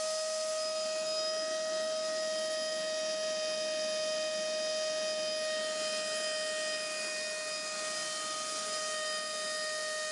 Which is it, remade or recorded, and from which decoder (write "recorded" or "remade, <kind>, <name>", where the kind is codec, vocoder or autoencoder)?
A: recorded